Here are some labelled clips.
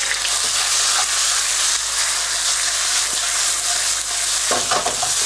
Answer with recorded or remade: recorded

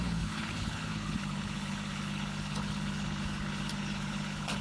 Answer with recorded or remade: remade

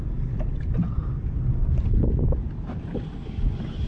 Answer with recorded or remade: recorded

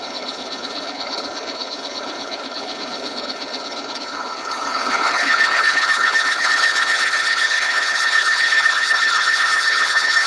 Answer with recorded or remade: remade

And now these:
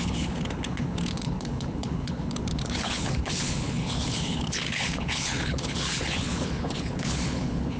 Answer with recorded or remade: remade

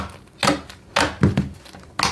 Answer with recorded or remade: recorded